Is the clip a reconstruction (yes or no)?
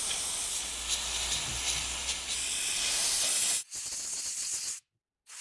no